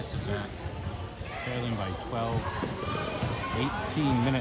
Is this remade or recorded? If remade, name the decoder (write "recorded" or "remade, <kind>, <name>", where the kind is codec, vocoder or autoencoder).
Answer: recorded